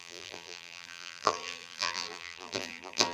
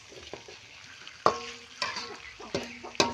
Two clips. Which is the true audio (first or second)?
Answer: second